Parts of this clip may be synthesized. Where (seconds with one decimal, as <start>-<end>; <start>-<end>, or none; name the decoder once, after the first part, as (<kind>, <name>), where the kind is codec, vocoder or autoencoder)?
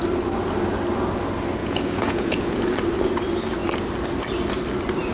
1.6-2.6 (vocoder, Vocos)